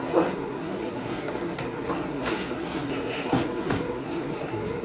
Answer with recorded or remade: remade